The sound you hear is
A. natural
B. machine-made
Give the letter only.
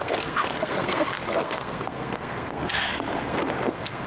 B